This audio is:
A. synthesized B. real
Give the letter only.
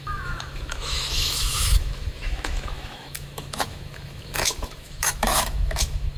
A